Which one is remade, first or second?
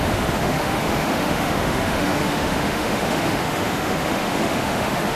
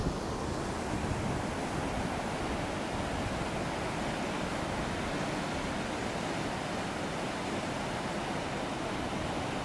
first